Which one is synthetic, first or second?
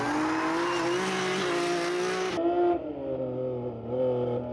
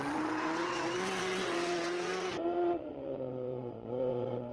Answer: second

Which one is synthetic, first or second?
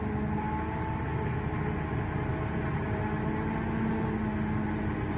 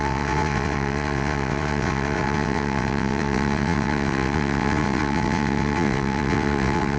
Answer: second